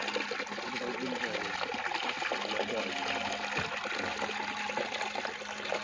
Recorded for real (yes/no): yes